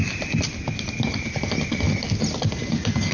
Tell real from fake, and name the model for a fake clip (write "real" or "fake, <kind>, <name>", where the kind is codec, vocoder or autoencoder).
real